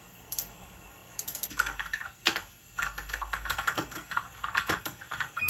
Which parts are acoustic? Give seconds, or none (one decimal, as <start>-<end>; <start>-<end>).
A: none